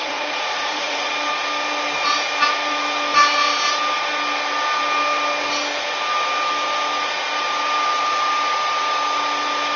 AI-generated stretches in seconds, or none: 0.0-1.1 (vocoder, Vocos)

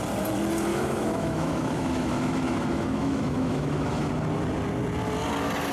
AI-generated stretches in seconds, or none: 0.7-4.1 (autoencoder, DAC-VAE)

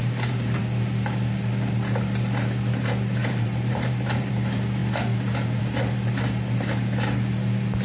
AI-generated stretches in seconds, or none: 0.0-0.6 (vocoder, BigVGAN v2); 3.2-4.3

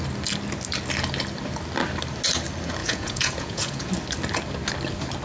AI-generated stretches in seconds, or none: 2.8-3.9 (vocoder, Vocos)